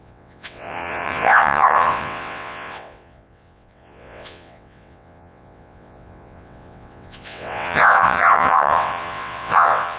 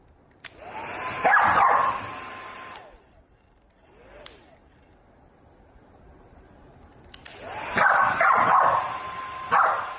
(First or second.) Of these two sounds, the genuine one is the second